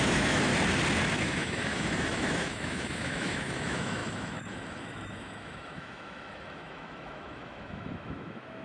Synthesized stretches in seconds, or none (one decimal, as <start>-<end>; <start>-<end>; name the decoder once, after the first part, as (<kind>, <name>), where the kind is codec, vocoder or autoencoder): 0.0-0.5 (autoencoder, DAC-VAE); 1.2-8.6